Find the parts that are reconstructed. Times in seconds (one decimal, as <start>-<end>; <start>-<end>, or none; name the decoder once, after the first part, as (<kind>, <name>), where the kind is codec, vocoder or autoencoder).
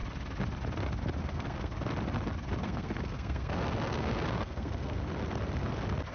1.2-1.7 (codec, SNAC); 2.6-5.0